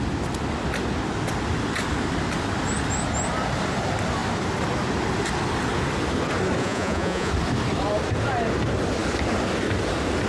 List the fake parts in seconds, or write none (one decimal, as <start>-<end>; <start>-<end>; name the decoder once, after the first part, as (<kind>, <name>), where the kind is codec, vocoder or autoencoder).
6.6-7.3 (vocoder, Vocos)